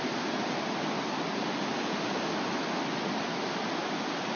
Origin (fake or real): real